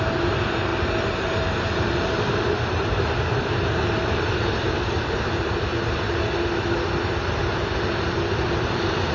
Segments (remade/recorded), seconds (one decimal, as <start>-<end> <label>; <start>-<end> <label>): 0.0-5.7 remade; 5.7-8.4 recorded; 8.4-9.1 remade